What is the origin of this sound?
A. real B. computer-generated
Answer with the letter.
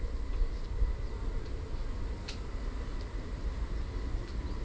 A